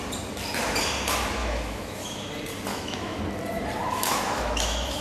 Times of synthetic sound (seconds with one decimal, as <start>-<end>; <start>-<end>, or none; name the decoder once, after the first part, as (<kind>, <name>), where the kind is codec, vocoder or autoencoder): 1.4-2.3 (autoencoder, DAC-VAE); 2.7-3.2; 3.8-5.0